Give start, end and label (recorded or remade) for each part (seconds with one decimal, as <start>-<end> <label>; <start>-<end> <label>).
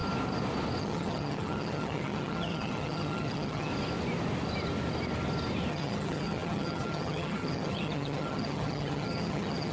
0.0-0.8 recorded; 0.8-3.7 remade; 3.7-5.7 recorded; 5.7-9.7 remade